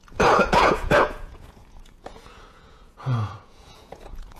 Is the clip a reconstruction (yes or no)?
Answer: yes